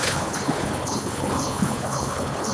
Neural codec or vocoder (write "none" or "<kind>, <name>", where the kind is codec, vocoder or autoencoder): codec, HILCodec